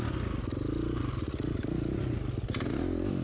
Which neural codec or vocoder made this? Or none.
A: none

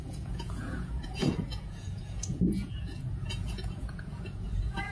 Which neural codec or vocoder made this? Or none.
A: vocoder, Vocos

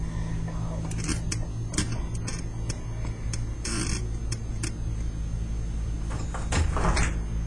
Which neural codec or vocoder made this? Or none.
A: none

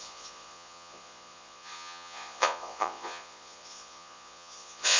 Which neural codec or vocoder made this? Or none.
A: vocoder, Vocos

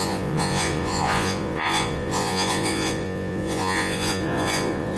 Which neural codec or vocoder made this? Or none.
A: vocoder, Vocos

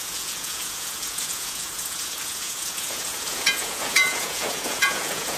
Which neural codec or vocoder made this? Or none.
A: vocoder, Vocos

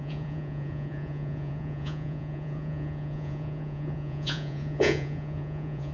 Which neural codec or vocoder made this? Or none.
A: vocoder, Vocos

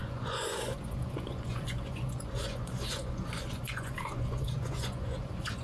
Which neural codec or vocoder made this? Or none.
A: vocoder, Vocos